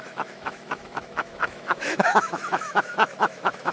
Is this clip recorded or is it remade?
remade